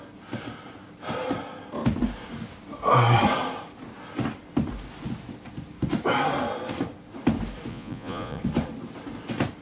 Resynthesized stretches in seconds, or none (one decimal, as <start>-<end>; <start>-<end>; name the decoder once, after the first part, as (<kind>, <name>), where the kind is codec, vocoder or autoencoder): 7.7-8.4 (vocoder, Vocos)